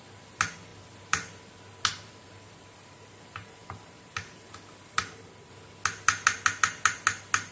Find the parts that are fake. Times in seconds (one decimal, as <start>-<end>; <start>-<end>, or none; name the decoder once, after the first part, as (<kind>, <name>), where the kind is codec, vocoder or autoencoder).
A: 0.7-1.4 (vocoder, BigVGAN v2); 1.9-4.5